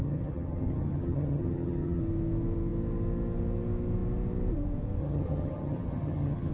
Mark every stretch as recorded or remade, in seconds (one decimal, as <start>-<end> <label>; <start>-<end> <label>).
0.0-2.0 remade; 2.0-5.0 recorded; 5.0-6.5 remade